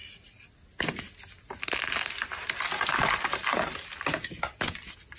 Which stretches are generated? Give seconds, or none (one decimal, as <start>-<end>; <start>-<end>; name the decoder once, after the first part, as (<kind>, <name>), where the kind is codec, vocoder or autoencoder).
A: none